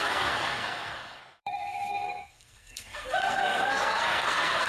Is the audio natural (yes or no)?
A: no